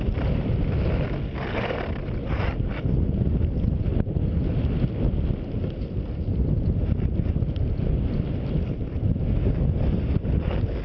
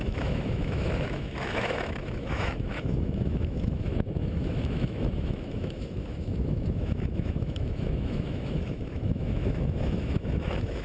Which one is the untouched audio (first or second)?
first